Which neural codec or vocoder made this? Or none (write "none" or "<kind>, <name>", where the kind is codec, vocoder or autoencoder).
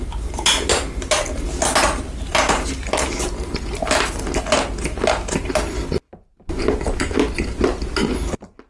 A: none